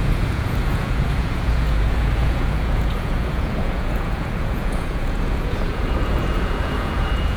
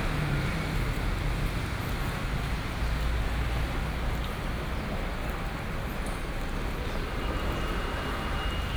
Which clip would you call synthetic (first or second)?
first